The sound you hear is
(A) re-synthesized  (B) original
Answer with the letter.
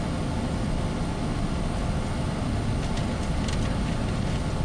B